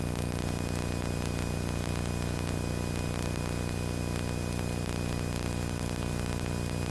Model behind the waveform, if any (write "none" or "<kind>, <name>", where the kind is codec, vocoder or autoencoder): none